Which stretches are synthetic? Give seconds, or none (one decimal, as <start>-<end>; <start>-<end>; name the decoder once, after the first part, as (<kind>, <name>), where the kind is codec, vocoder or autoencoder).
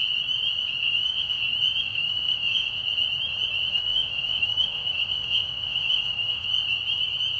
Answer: 0.8-1.4 (autoencoder, DAC-VAE); 1.8-2.7; 3.7-6.5